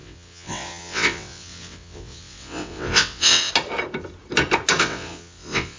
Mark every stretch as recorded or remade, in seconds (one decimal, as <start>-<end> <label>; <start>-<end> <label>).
0.0-3.5 remade; 3.5-4.8 recorded; 4.8-5.8 remade